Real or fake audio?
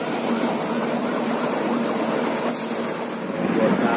real